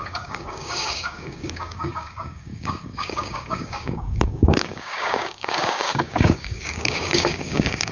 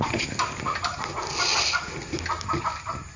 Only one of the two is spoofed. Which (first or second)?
first